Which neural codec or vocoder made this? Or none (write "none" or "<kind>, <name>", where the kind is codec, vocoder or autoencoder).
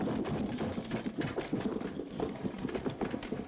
none